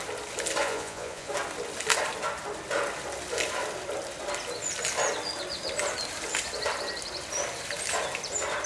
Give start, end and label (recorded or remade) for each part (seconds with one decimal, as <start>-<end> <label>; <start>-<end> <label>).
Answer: 0.0-0.6 recorded; 0.6-1.3 remade; 1.3-8.7 recorded